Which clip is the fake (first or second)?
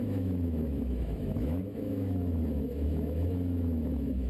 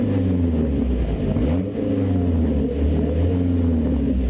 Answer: first